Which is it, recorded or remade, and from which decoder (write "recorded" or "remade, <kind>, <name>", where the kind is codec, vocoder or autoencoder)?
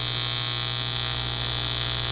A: recorded